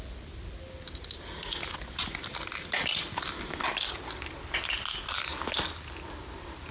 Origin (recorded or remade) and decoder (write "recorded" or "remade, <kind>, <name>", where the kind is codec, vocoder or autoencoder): recorded